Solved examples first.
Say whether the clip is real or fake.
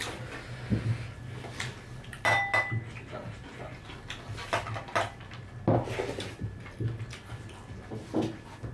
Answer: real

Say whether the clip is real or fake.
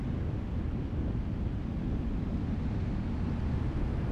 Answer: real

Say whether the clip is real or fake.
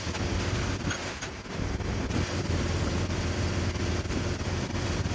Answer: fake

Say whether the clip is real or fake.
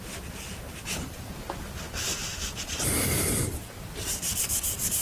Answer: real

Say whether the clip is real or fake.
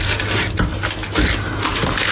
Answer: real